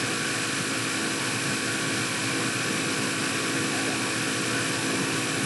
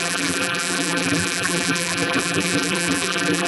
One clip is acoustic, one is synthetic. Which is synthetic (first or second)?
second